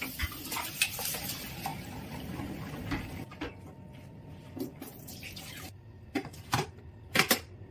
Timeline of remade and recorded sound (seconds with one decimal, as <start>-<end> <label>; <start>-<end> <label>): 0.0-7.7 recorded